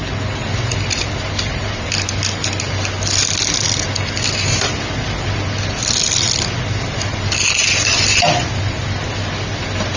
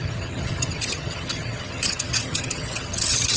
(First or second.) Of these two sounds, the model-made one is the second